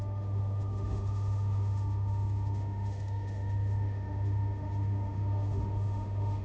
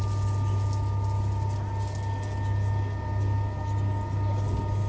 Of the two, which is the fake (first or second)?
first